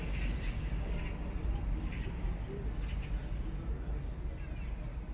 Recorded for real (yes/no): yes